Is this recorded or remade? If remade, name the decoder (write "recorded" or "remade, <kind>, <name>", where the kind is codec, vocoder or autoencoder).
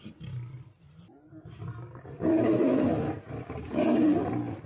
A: recorded